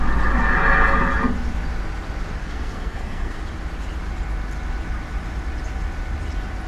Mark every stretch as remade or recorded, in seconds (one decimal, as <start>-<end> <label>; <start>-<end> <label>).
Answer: 0.0-2.4 recorded; 2.4-3.4 remade; 3.4-6.7 recorded